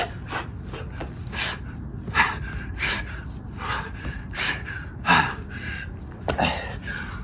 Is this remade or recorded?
recorded